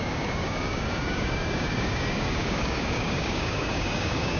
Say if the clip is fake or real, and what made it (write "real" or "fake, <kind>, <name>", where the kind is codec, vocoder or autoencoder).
fake, codec, DAC